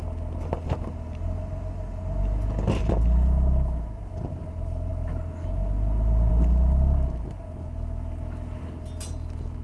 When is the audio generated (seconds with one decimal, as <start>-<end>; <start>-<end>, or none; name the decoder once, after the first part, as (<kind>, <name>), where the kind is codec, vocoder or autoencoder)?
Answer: none